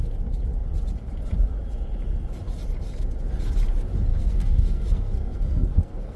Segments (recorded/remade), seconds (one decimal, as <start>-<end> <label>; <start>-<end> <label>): 0.0-4.1 recorded; 4.1-6.2 remade